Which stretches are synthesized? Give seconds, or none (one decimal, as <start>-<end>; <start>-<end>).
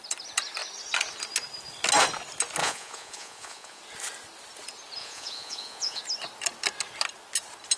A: 2.6-3.8; 5.0-6.0